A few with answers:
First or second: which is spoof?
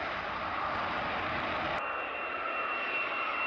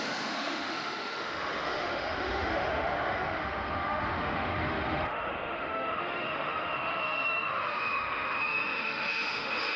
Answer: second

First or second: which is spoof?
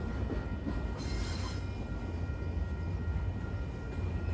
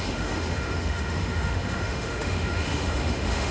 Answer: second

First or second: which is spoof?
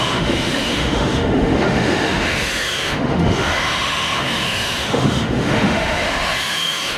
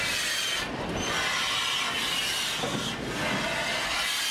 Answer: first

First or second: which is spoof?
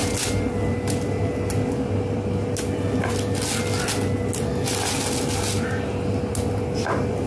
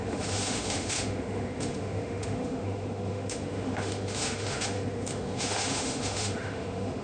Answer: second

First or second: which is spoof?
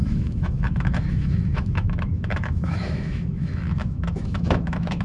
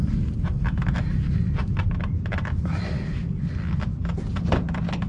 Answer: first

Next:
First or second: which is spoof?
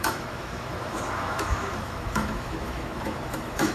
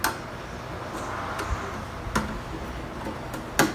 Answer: first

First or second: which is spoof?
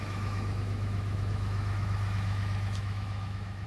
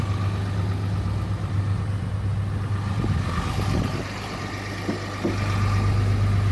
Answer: first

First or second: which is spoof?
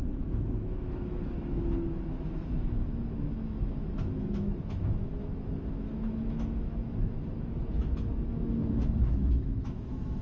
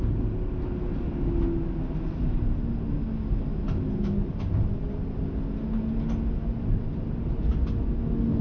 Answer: first